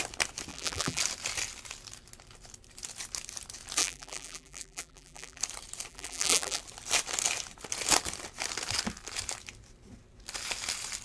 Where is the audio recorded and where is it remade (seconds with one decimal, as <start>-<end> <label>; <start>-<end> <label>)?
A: 0.0-0.5 recorded; 0.5-1.0 remade; 1.0-3.8 recorded; 3.8-5.4 remade; 5.4-5.9 recorded; 5.9-6.6 remade; 6.6-11.0 recorded